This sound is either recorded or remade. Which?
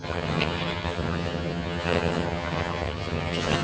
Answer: remade